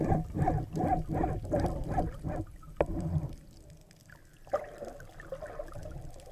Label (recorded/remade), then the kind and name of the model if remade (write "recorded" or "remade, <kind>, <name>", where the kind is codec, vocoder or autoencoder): recorded